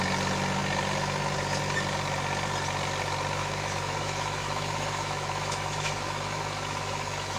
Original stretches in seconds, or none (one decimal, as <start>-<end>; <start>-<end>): 0.0-3.4